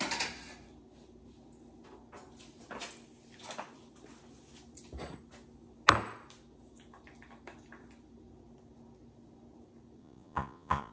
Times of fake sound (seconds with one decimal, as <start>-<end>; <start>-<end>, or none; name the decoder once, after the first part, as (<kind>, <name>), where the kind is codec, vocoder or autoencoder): 10.0-10.9 (vocoder, Vocos)